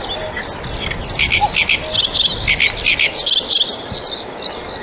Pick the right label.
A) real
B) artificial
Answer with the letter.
A